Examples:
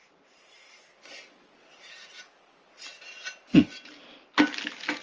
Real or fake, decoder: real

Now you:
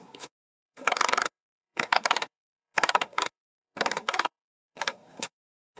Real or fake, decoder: fake, codec, SNAC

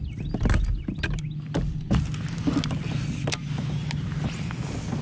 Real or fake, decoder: real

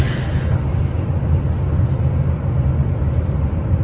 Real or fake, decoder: real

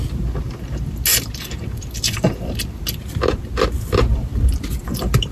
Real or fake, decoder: real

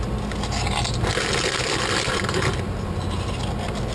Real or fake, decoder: real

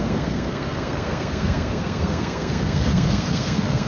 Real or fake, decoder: fake, codec, SNAC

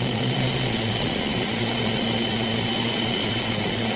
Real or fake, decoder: fake, vocoder, Vocos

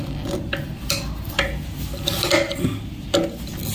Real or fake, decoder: real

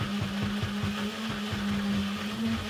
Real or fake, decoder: real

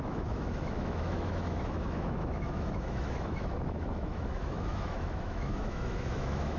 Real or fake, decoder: fake, autoencoder, DAC-VAE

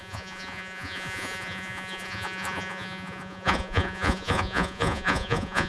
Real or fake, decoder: fake, vocoder, Vocos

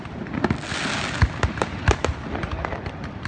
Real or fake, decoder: real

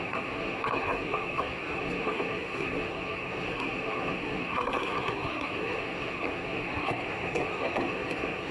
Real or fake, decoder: fake, codec, SNAC